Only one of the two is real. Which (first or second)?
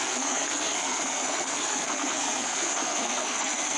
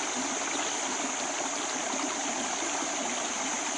second